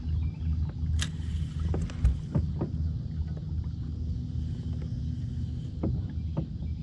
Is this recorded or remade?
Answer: recorded